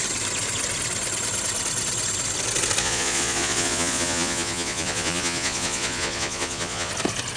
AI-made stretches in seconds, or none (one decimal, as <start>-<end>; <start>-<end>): 2.8-6.9